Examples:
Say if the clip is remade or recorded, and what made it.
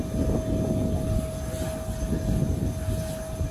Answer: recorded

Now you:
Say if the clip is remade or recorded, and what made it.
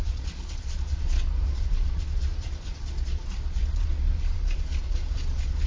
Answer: remade, vocoder, Vocos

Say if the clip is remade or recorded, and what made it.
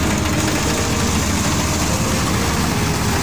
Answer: recorded